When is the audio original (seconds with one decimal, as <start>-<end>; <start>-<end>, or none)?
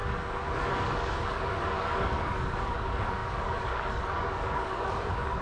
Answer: none